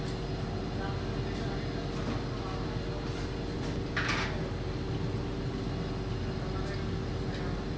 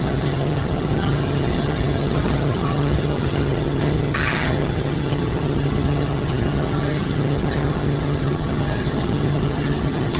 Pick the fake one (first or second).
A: second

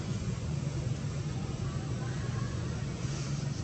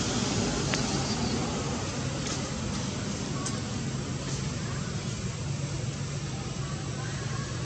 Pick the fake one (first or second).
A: first